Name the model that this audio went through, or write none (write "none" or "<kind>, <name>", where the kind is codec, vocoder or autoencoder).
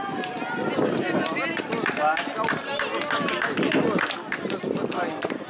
none